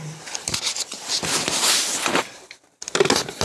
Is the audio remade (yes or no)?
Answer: no